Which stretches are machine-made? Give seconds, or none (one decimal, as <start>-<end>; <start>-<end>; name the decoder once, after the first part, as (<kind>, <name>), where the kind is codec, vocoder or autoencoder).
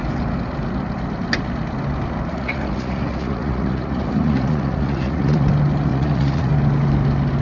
2.3-5.5 (vocoder, Vocos); 5.9-6.5